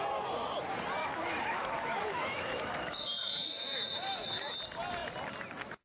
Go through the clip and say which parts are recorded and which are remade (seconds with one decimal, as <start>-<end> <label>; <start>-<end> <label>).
0.0-1.0 recorded; 1.0-4.5 remade; 4.5-5.8 recorded